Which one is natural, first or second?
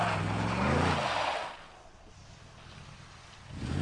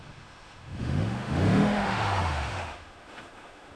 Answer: first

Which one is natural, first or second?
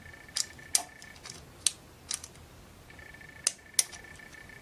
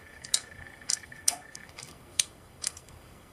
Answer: first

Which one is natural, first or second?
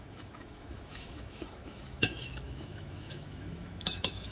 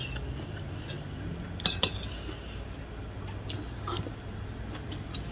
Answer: second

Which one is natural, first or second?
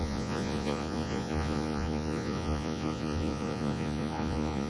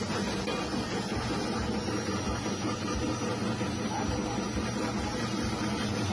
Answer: second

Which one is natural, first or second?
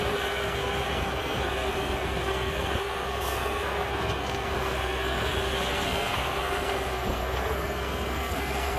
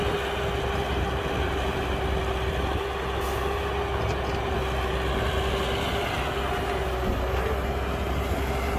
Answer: second